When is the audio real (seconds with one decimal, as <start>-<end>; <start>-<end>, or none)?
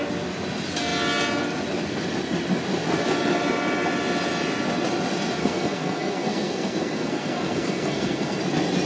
0.0-5.4; 8.4-8.9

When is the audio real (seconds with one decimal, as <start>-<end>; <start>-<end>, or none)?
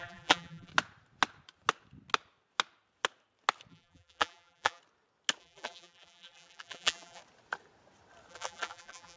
0.7-3.7; 4.8-5.4; 7.2-8.3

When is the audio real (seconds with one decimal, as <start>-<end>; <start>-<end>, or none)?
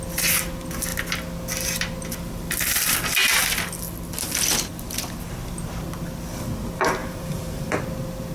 0.0-7.0; 7.7-8.3